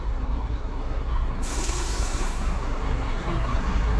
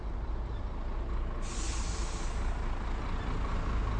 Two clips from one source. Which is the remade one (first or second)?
first